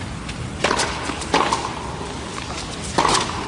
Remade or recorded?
recorded